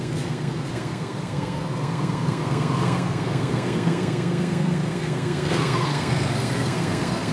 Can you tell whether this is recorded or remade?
remade